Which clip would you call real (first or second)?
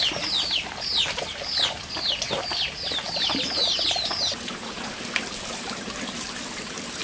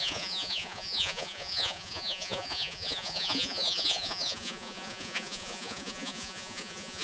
first